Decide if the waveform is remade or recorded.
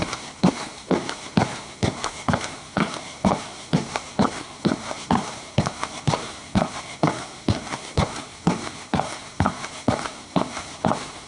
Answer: remade